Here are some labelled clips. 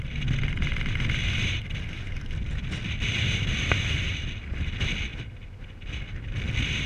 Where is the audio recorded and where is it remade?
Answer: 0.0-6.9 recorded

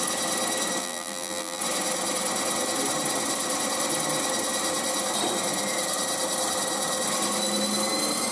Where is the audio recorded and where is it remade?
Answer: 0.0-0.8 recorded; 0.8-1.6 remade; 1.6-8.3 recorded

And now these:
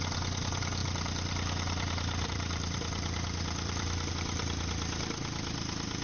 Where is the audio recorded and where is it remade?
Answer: 0.0-0.8 recorded; 0.8-4.1 remade; 4.1-6.0 recorded

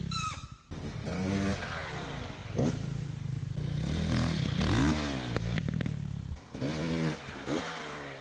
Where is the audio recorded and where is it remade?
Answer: 0.0-8.2 recorded

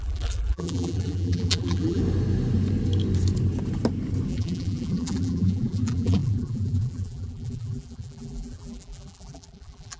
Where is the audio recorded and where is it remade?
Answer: 0.0-2.0 remade; 2.0-4.3 recorded; 4.3-10.0 remade

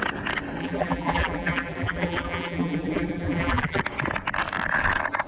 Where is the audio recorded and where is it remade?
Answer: 0.0-0.6 recorded; 0.6-3.8 remade; 3.8-5.3 recorded

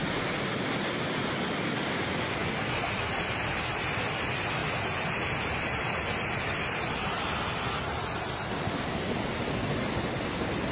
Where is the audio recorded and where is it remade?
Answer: 0.0-10.7 recorded